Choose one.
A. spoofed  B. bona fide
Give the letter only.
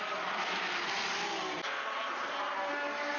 B